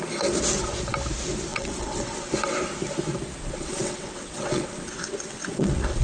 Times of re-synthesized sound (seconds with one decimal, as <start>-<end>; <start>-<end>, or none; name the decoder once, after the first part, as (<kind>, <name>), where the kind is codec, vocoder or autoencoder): 1.5-2.3 (vocoder, WaveNeXt); 3.4-6.0